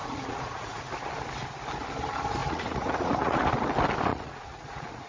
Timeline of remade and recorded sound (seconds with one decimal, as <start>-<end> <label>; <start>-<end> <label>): 0.0-0.8 remade; 0.8-2.4 recorded; 2.4-3.5 remade; 3.5-4.1 recorded; 4.1-5.1 remade